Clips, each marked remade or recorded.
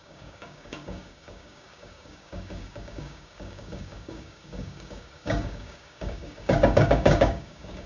remade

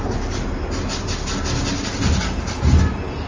recorded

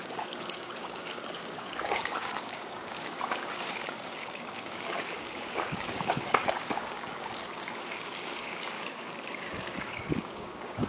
remade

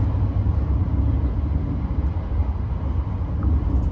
recorded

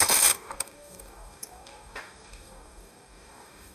remade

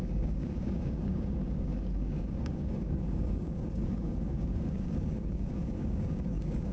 remade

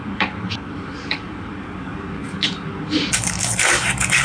remade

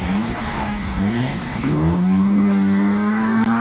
remade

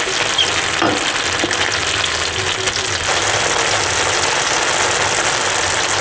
recorded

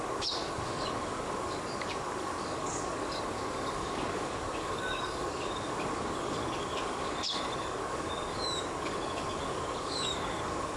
remade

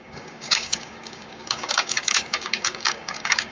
remade